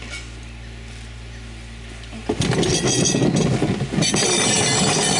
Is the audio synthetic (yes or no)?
no